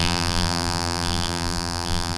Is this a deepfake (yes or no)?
yes